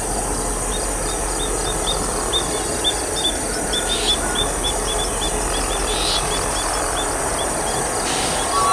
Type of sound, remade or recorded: recorded